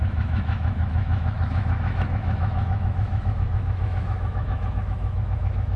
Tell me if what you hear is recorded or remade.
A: remade